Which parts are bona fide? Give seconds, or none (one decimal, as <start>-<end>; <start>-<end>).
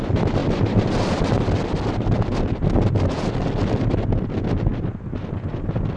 0.0-6.0